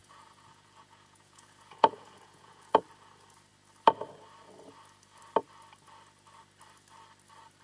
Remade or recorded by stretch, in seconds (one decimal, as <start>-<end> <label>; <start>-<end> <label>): 0.0-2.8 remade; 2.8-7.6 recorded